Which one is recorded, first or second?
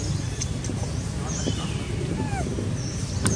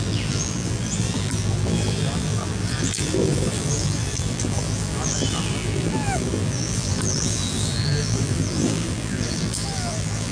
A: first